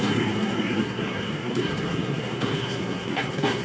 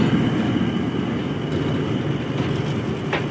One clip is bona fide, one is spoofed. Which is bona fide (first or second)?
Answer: second